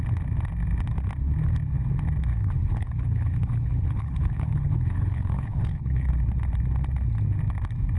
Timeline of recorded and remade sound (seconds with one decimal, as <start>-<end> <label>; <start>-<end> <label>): 0.0-2.3 recorded; 2.3-6.1 remade; 6.1-8.0 recorded